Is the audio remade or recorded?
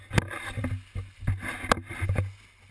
recorded